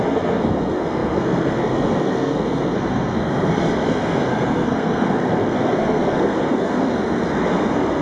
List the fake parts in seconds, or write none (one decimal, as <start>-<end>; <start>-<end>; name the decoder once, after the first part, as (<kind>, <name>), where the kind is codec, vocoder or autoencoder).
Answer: 0.0-8.0 (codec, SNAC)